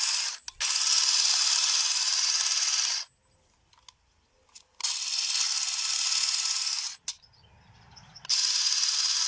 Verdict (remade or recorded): recorded